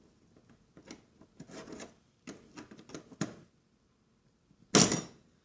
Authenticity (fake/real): real